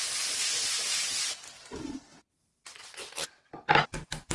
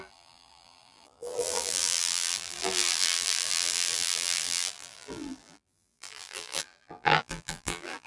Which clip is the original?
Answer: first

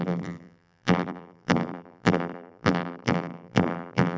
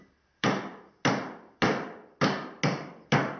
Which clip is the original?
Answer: second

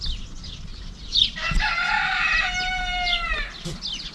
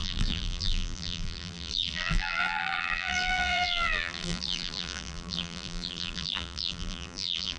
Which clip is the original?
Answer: first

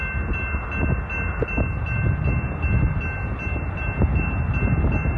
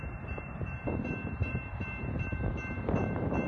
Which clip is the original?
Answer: first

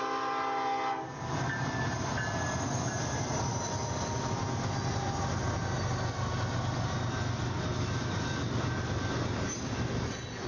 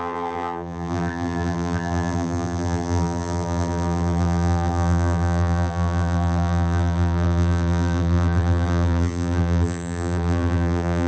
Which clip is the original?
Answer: first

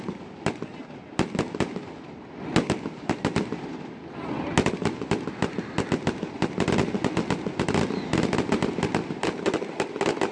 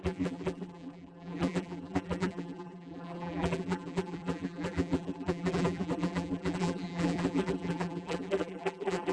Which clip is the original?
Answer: first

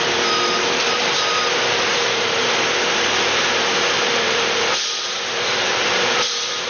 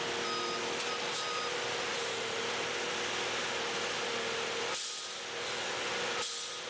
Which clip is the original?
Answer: second